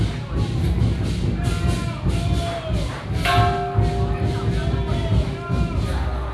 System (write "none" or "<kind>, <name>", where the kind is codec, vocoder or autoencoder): none